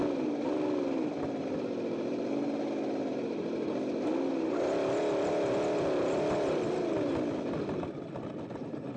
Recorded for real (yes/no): yes